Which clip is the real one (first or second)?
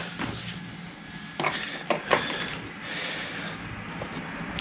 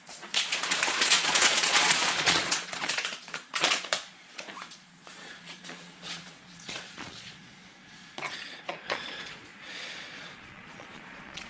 first